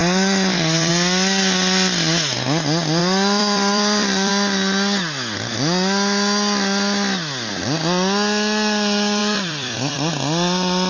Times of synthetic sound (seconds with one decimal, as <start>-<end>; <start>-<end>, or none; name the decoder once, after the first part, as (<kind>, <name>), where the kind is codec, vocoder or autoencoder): 0.0-0.9 (vocoder, BigVGAN v2); 3.0-4.3; 9.2-10.1